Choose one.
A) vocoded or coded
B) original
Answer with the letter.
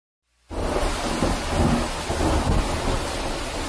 B